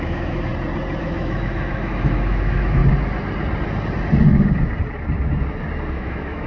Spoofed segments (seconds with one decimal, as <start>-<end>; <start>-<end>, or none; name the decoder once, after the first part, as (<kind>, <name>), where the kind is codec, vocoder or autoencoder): 0.0-0.5 (autoencoder, DAC-VAE); 1.0-2.8; 5.9-6.5